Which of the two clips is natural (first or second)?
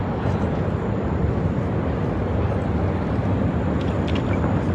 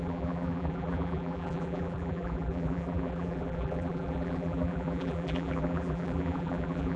first